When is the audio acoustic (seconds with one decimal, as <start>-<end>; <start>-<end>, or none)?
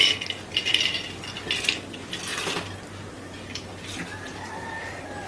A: 0.0-5.3